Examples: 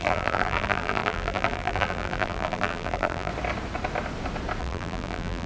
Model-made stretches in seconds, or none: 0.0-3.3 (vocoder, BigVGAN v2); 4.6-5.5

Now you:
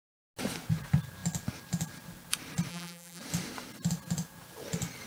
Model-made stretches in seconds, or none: 2.7-3.2 (vocoder, BigVGAN v2)

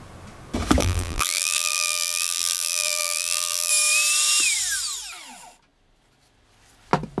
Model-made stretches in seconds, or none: 0.8-3.7 (vocoder, BigVGAN v2)

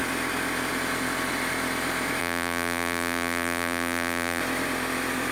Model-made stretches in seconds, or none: 2.2-4.4 (vocoder, BigVGAN v2)

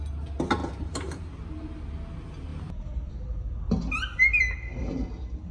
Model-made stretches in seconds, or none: 2.5-3.1 (vocoder, BigVGAN v2)